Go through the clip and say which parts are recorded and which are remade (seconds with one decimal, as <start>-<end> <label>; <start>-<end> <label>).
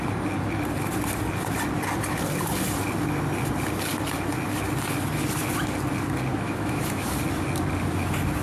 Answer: 0.0-6.3 recorded; 6.3-7.0 remade; 7.0-8.4 recorded